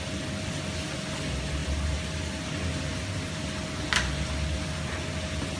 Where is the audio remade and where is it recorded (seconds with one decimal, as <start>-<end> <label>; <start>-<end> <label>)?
0.0-5.6 recorded